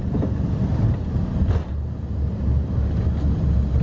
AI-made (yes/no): no